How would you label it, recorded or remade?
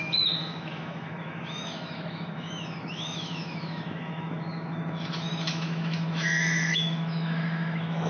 remade